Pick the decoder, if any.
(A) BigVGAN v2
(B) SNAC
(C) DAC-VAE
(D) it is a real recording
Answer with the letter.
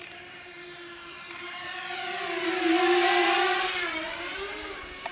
A